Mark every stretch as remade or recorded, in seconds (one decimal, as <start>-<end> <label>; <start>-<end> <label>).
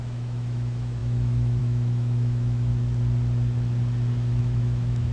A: 0.0-2.7 remade; 2.7-4.4 recorded; 4.4-5.1 remade